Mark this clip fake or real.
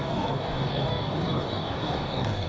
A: fake